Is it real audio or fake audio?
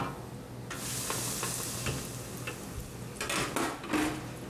real